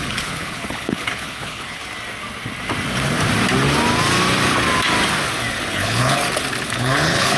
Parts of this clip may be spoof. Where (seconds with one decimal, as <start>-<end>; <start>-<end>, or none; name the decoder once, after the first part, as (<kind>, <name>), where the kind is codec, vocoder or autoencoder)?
0.0-1.8 (codec, HILCodec); 5.7-6.2; 6.7-7.4